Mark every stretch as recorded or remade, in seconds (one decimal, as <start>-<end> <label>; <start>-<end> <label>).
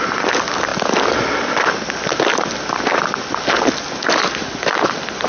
0.0-5.3 recorded